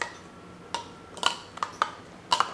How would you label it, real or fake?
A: real